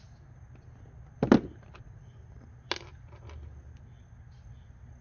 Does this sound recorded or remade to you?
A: recorded